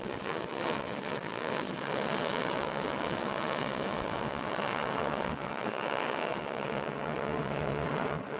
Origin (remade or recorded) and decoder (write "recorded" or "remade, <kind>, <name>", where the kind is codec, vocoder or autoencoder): remade, vocoder, WaveNeXt